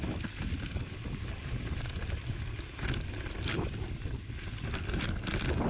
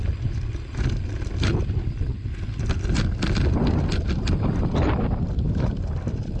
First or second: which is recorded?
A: second